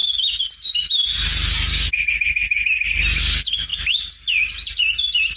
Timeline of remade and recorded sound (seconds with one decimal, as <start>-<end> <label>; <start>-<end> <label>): 0.0-3.7 recorded; 3.7-4.4 remade; 4.4-5.4 recorded